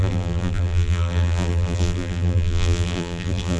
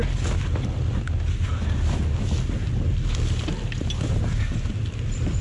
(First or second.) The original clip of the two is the second